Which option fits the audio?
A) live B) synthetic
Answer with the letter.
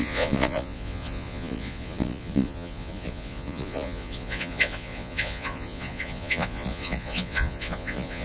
B